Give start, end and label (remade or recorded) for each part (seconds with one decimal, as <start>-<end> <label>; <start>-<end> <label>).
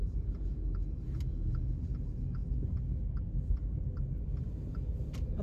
0.0-5.4 recorded